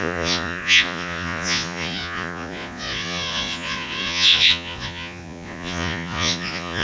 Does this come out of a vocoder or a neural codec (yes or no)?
yes